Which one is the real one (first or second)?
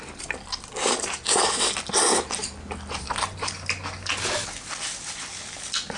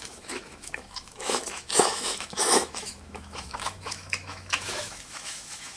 first